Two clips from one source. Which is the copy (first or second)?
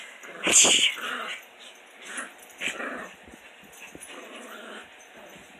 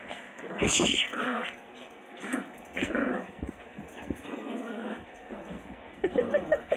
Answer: second